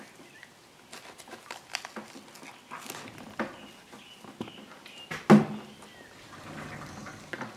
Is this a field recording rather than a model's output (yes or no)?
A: yes